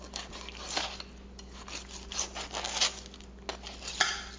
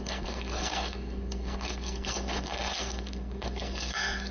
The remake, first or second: second